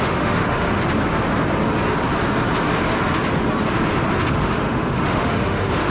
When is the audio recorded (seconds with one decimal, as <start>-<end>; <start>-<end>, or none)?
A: 0.8-4.3